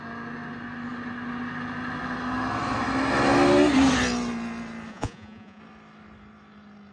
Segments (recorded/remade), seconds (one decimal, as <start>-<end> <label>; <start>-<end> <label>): 0.0-4.9 recorded; 4.9-5.6 remade; 5.6-6.9 recorded